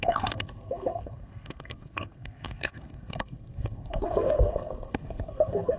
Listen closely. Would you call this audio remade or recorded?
remade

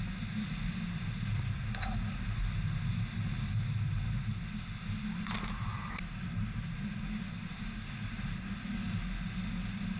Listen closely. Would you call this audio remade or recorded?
recorded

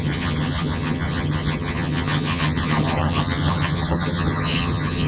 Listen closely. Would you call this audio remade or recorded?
remade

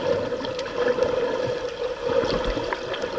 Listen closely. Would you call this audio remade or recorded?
recorded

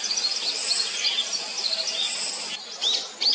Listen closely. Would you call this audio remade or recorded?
recorded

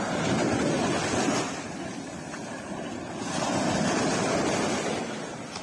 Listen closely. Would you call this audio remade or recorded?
recorded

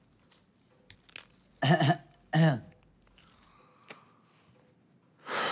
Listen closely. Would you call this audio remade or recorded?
recorded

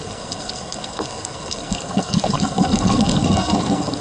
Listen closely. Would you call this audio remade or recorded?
remade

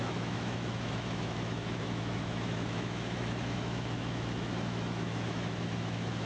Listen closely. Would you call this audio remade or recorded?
remade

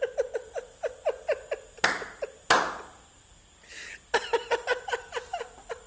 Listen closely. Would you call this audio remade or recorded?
recorded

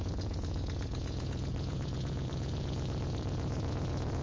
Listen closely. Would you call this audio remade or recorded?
remade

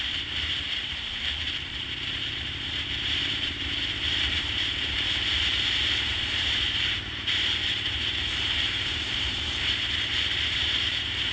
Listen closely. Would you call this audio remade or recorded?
remade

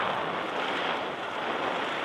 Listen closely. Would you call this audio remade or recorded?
recorded